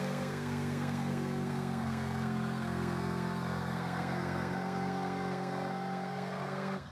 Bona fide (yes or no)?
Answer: no